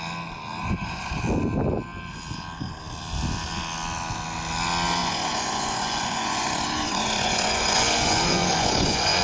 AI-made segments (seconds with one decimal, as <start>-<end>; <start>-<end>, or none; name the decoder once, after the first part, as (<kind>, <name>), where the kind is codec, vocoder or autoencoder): 0.6-1.2 (vocoder, Vocos); 5.0-9.2